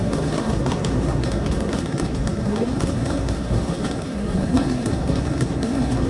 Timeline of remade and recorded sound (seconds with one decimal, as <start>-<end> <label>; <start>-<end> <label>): 0.0-6.1 remade